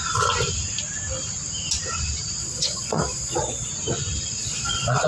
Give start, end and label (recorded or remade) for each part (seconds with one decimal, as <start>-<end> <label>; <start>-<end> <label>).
0.0-2.4 recorded; 2.4-3.7 remade; 3.7-4.4 recorded; 4.4-5.1 remade